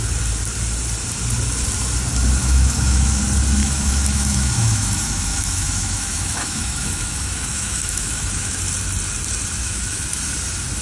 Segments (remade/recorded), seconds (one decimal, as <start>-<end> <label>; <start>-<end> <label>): 0.0-2.4 recorded; 2.4-3.2 remade; 3.2-3.6 recorded; 3.6-8.6 remade; 8.6-9.6 recorded; 9.6-10.2 remade; 10.2-10.8 recorded